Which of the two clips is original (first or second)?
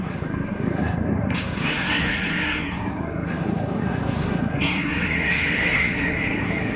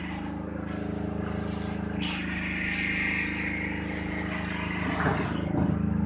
second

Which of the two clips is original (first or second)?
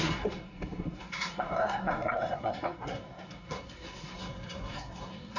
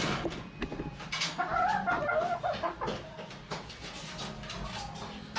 second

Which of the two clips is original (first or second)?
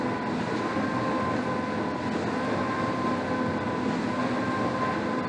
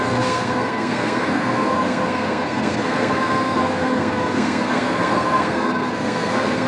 first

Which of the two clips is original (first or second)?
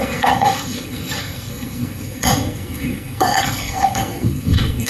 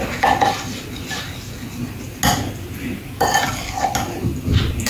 second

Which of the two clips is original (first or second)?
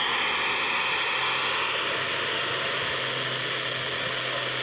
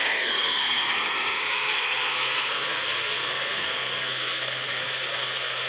first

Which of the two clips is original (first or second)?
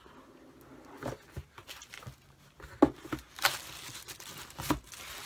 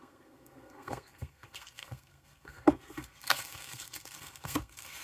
first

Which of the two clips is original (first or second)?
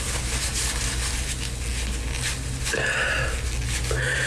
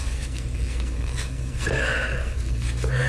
first